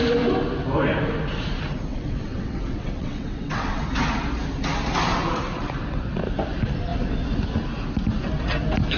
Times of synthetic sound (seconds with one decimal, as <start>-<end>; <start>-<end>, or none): 1.9-3.8